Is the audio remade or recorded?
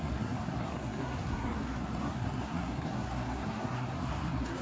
remade